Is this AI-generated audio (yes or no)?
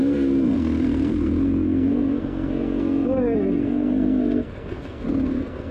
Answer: yes